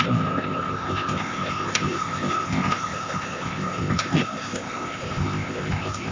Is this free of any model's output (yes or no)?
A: no